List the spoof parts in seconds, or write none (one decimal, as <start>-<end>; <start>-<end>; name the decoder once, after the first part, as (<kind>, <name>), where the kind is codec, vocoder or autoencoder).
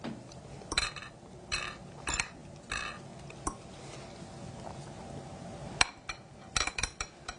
0.0-2.4 (vocoder, BigVGAN v2); 6.7-7.4